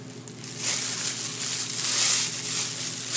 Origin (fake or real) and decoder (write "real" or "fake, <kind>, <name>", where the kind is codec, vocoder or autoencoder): real